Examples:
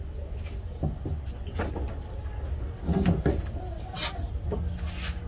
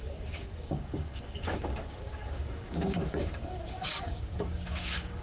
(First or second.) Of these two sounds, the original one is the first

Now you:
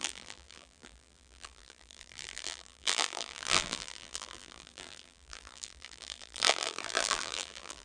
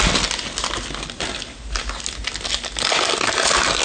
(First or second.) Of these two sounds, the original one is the second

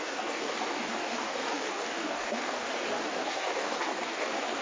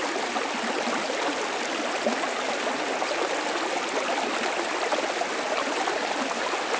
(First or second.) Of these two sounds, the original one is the second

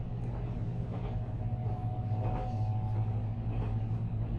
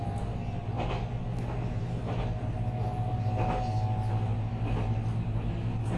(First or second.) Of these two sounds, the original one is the second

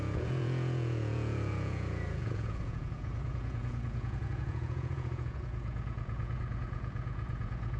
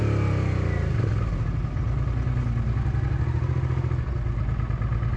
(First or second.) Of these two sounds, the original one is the second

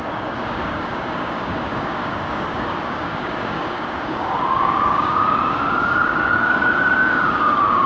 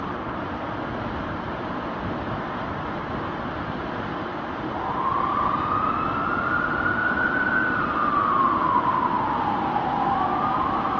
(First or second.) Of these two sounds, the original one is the second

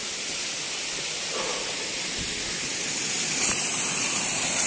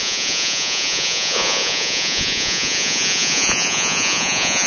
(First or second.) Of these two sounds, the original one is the first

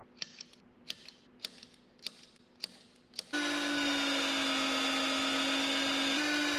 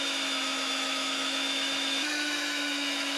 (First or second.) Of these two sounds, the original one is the first